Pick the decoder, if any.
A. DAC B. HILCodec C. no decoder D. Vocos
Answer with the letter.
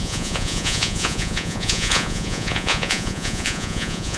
D